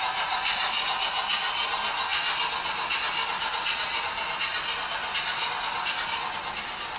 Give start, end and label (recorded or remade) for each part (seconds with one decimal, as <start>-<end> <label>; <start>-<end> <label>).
0.0-7.0 recorded